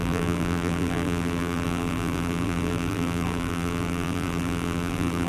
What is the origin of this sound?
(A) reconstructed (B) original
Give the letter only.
A